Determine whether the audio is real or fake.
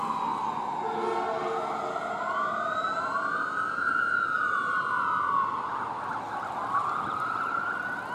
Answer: real